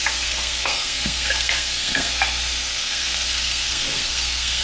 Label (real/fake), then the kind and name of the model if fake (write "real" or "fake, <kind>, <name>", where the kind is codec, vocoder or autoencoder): fake, codec, SNAC